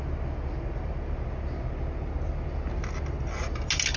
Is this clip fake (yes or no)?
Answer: no